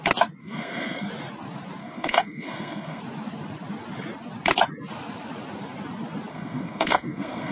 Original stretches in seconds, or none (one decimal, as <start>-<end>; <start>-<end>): 0.0-0.4; 1.1-1.8; 3.0-6.3